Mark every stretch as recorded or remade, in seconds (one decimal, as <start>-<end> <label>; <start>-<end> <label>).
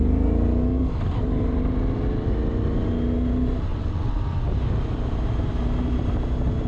0.0-3.7 recorded; 3.7-4.2 remade; 4.2-6.7 recorded